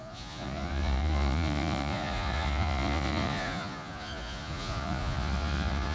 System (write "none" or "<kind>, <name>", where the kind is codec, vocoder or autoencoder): vocoder, Vocos